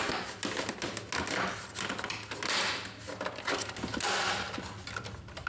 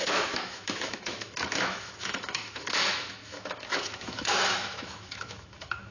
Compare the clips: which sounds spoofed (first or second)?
second